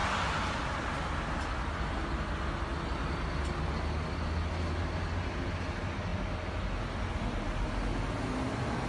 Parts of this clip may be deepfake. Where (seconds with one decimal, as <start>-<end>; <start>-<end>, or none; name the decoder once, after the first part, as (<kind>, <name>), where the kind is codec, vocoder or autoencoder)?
none